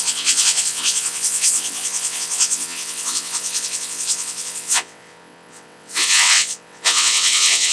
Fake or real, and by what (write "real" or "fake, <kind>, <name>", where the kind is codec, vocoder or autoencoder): fake, vocoder, WaveNeXt